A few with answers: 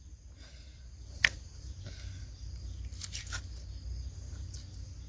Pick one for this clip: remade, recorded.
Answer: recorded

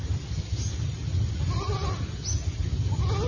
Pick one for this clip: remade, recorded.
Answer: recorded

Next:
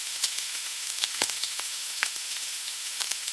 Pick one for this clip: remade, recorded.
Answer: remade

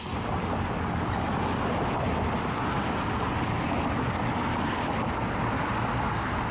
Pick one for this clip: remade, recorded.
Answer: recorded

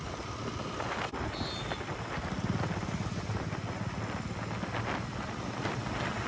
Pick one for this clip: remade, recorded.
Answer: recorded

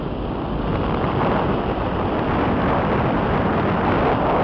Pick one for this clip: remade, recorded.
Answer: recorded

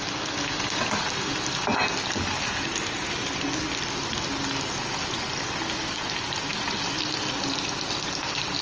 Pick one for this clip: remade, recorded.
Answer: recorded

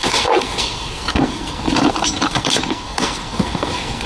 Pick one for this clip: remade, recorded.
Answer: remade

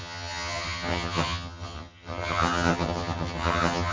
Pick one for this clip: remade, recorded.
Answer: remade